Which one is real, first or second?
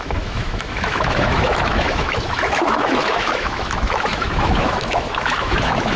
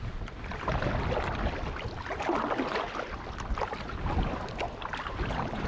second